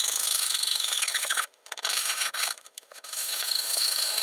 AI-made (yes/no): yes